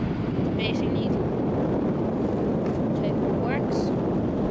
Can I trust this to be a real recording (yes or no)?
yes